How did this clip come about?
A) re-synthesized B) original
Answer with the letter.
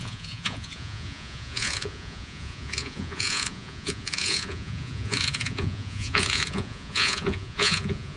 A